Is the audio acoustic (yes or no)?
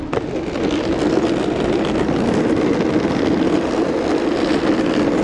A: yes